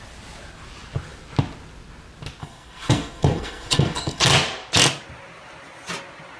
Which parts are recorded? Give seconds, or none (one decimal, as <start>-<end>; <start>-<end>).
0.0-2.4; 4.2-6.4